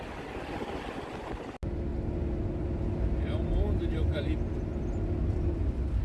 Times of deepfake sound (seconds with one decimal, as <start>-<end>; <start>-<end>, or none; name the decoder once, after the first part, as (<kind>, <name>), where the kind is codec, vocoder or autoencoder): none